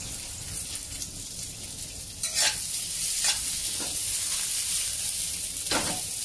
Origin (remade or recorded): recorded